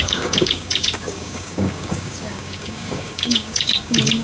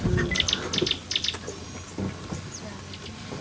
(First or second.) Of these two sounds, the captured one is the second